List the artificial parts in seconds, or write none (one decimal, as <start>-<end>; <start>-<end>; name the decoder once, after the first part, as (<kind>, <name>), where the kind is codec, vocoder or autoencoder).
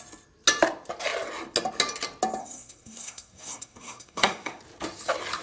2.4-4.6 (codec, SNAC)